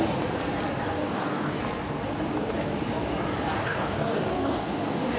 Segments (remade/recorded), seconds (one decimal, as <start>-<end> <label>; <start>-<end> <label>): 0.0-0.9 recorded; 0.9-1.6 remade; 1.6-3.6 recorded; 3.6-5.2 remade